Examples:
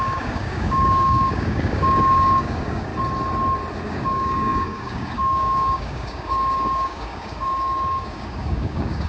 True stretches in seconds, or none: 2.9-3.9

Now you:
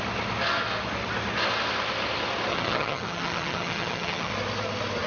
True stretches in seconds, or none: 0.0-2.5; 4.3-5.1

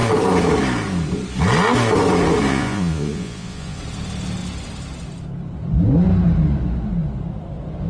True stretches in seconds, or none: 0.0-2.5; 3.8-7.9

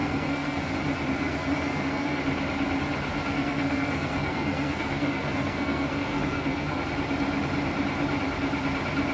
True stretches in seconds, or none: 0.7-1.1; 2.2-3.1; 6.8-9.1

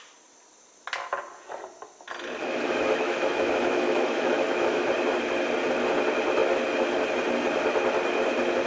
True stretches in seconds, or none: 0.0-2.4; 4.9-8.7